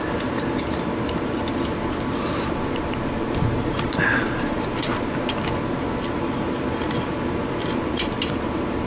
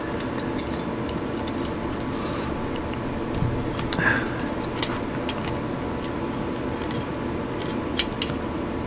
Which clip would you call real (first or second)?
second